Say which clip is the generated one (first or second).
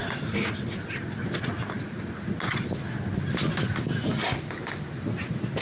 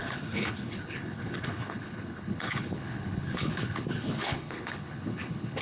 second